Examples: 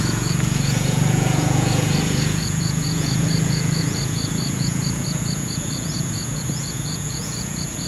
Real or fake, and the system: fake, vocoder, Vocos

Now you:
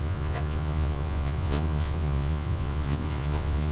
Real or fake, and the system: fake, vocoder, Vocos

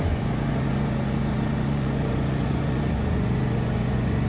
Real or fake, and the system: fake, vocoder, Vocos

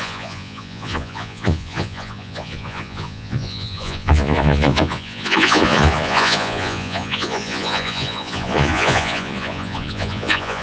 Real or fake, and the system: fake, vocoder, Vocos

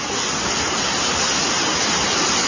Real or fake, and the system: real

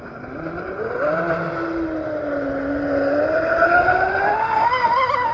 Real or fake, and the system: real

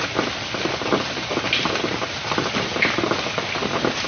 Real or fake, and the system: real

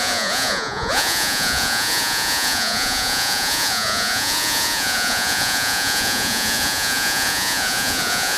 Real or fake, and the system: fake, vocoder, Vocos